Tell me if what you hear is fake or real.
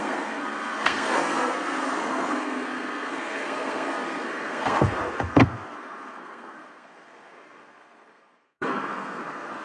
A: fake